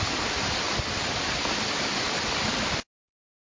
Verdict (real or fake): real